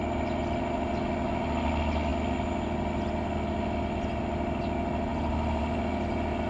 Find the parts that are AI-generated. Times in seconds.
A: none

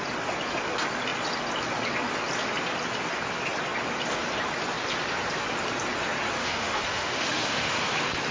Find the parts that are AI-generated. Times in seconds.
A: 6.4-7.9 (autoencoder, DAC-VAE)